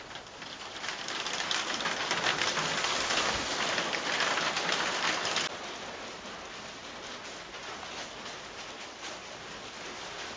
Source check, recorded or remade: recorded